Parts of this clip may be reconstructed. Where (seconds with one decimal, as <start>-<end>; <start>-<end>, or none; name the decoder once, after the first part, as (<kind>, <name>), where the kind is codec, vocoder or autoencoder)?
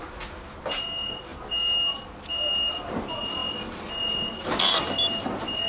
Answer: none